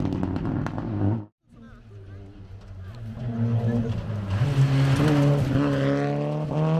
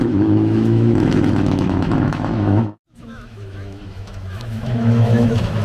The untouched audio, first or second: first